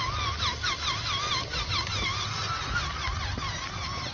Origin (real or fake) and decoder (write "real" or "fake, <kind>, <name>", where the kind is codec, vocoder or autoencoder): real